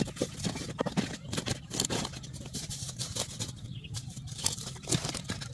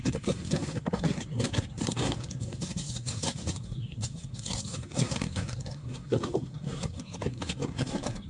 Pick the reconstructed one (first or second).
second